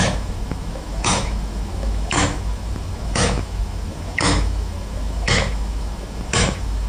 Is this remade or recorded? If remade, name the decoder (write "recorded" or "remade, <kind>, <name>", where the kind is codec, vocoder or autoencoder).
remade, autoencoder, DAC-VAE